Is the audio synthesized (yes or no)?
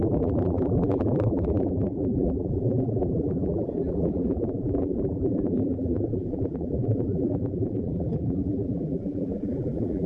yes